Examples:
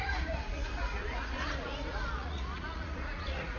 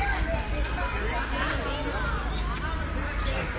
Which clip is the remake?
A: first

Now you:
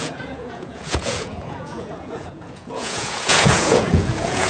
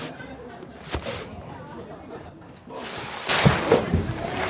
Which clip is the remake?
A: first